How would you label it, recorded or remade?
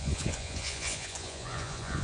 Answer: remade